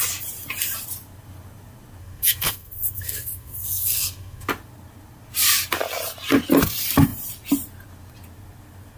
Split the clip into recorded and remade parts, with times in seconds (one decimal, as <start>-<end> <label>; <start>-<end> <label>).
0.0-2.0 recorded; 2.0-4.5 remade; 4.5-9.0 recorded